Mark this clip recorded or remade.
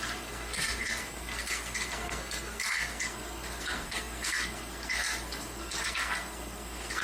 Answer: remade